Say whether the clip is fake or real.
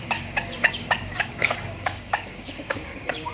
fake